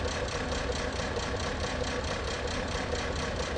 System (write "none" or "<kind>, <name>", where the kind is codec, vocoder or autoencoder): vocoder, BigVGAN v2